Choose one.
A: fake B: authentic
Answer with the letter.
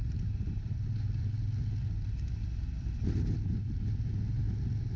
B